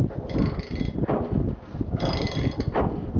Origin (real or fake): real